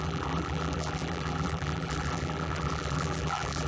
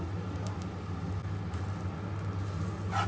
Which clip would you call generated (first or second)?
first